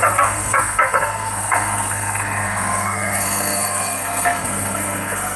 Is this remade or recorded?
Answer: remade